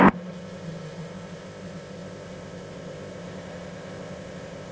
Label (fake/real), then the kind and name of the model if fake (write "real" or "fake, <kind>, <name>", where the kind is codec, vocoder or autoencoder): fake, codec, ZipCodec